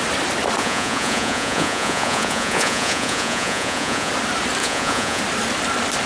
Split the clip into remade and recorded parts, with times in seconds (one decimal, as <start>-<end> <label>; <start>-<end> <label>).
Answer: 0.0-0.6 recorded; 0.6-4.1 remade; 4.1-4.6 recorded; 4.6-5.2 remade; 5.2-6.1 recorded